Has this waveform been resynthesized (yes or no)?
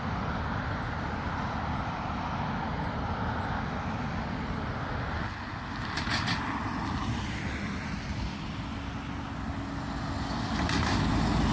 no